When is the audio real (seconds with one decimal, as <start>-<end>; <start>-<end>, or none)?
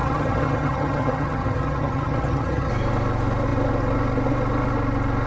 2.7-5.3